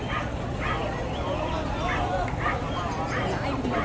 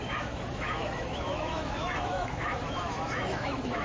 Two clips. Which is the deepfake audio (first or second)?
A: second